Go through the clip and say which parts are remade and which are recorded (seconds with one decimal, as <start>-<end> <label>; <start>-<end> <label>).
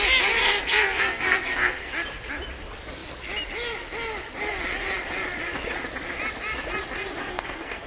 0.0-0.4 recorded; 0.4-1.9 remade; 1.9-7.2 recorded; 7.2-7.9 remade